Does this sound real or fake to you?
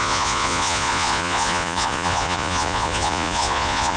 fake